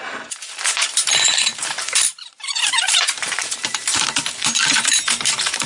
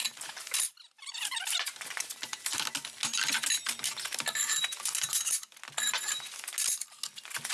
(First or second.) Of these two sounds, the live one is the second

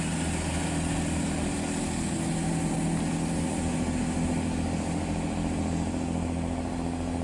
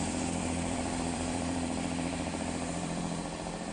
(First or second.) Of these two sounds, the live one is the first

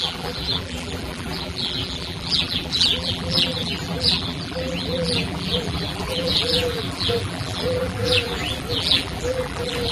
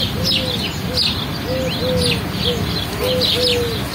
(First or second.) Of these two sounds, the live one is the second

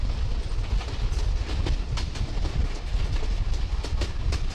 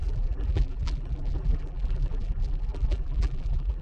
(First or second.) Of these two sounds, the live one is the first